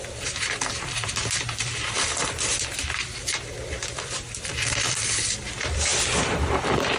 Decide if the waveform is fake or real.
fake